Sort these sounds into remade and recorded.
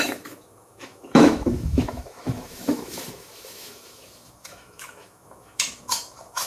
remade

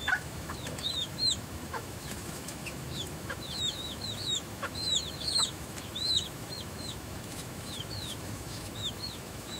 remade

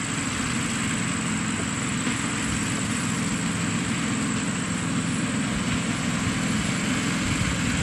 recorded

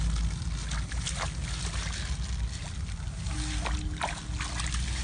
recorded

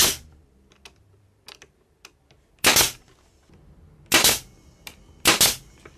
recorded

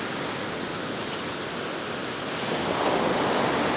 recorded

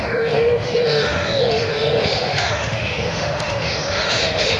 remade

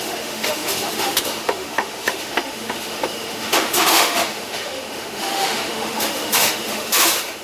remade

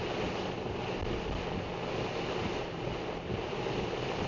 recorded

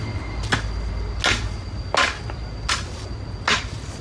recorded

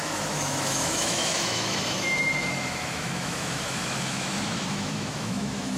remade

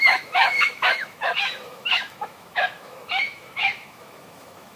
remade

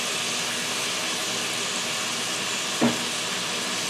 recorded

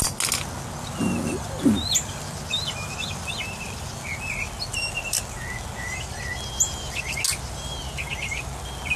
recorded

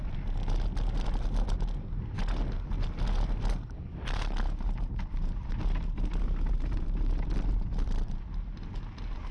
recorded